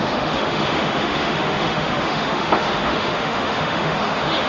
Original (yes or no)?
no